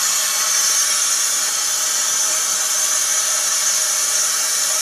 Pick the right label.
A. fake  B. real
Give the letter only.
B